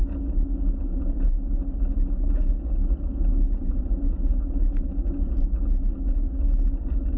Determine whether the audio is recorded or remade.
recorded